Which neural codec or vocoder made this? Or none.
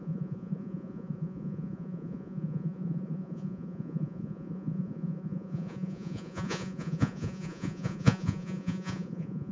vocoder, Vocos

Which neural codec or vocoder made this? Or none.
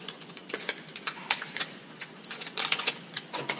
vocoder, Vocos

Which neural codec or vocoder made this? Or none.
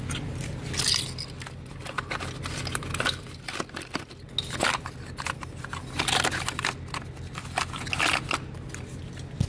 none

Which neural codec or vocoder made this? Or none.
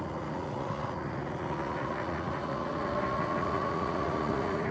vocoder, Vocos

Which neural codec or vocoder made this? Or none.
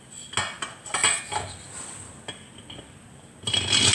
none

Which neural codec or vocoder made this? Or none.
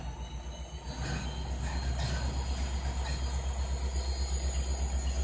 none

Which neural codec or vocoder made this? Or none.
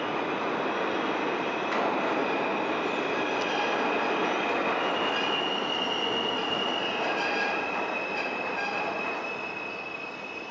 none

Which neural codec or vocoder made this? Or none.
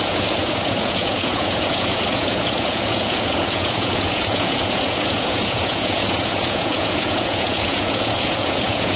vocoder, Vocos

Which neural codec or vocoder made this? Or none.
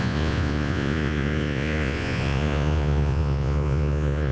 vocoder, Vocos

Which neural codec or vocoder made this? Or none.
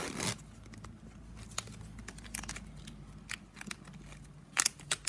none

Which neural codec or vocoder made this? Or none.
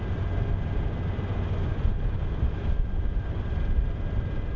none